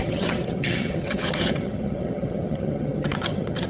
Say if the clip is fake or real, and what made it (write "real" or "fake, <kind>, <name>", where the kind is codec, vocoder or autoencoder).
fake, vocoder, HiFi-GAN